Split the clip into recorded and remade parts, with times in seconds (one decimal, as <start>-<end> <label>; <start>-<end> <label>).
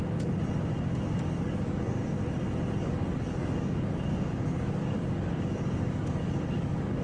0.0-1.2 recorded; 1.2-2.0 remade; 2.0-2.8 recorded; 2.8-7.0 remade